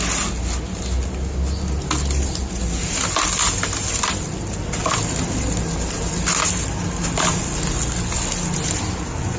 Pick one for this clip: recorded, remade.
recorded